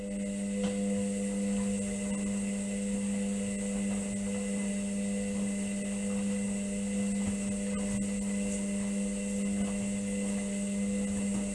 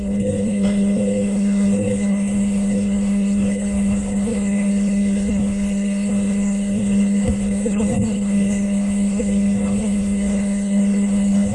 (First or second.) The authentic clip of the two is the first